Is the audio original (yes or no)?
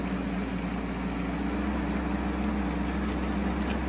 yes